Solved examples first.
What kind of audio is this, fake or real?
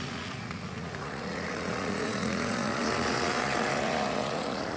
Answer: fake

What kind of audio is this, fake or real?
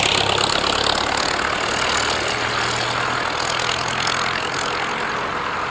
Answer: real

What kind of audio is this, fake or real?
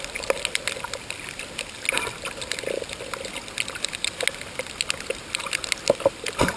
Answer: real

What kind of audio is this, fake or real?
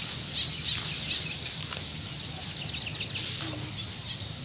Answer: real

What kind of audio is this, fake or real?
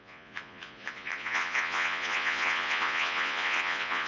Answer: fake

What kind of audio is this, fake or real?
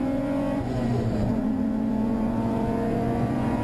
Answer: fake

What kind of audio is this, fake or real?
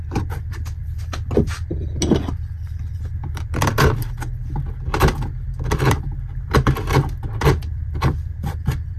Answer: real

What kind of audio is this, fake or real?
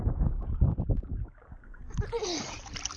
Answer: real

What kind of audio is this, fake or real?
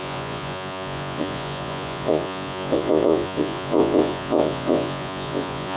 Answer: fake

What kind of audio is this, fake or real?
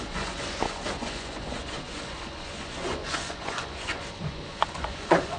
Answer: fake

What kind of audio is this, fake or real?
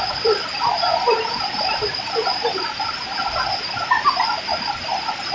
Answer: real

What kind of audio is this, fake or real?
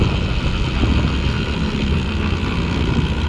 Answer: real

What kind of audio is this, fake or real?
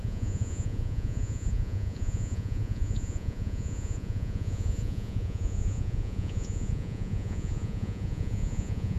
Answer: fake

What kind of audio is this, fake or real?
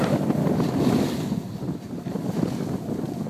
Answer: real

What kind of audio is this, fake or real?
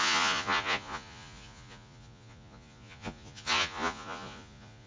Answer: fake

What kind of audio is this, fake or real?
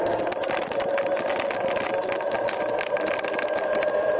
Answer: real